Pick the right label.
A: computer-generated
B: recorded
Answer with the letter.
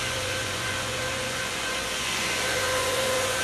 A